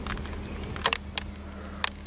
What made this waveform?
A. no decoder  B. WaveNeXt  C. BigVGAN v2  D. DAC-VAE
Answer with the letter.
A